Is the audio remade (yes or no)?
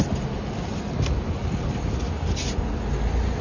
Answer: no